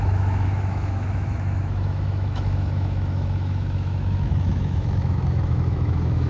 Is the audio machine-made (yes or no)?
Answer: yes